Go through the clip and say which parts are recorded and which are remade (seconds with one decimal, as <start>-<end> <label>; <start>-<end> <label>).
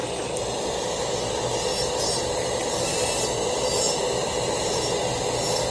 0.0-5.7 recorded